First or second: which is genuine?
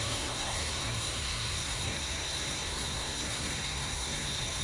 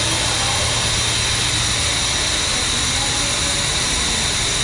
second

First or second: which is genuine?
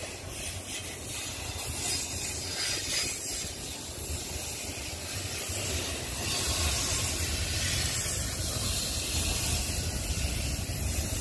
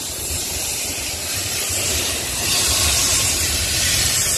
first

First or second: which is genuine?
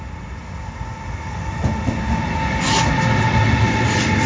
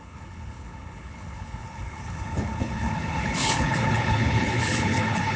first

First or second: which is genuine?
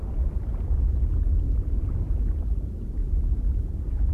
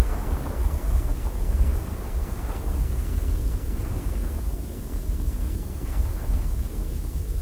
first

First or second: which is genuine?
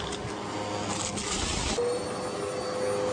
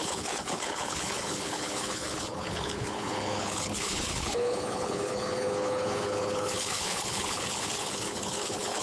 first